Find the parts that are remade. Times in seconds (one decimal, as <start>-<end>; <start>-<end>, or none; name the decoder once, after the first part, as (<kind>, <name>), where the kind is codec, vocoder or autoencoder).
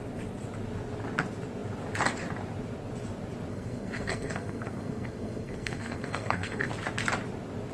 3.5-6.7 (codec, SNAC)